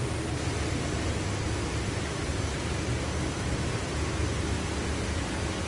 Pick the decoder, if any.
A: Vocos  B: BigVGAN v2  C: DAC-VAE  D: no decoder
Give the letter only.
D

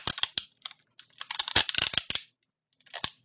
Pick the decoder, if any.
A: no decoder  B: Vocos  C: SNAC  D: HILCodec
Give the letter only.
A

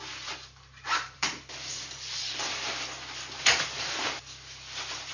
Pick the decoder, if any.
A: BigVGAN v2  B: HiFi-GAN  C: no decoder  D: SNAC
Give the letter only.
A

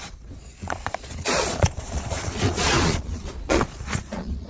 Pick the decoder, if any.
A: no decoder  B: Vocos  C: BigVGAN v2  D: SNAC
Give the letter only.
B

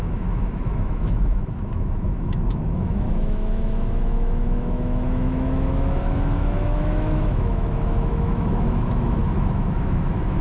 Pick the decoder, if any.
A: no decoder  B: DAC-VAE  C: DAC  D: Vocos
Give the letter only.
B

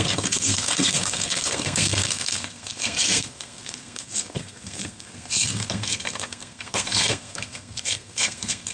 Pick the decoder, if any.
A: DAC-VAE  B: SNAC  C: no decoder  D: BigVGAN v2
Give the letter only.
B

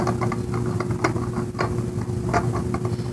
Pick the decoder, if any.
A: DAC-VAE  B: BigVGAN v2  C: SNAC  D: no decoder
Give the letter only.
D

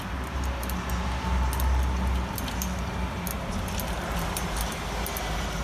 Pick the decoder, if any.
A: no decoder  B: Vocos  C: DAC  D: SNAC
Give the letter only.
A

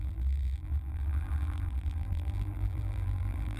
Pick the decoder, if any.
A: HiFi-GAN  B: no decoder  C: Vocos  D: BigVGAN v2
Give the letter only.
D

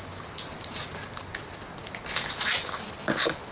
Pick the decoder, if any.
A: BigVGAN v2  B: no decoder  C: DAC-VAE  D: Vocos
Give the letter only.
B